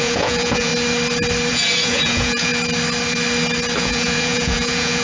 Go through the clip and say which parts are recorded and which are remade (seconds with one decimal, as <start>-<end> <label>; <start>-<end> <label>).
0.0-0.7 remade; 0.7-1.5 recorded; 1.5-2.5 remade; 2.5-3.8 recorded; 3.8-5.0 remade